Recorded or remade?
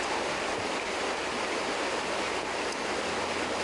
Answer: recorded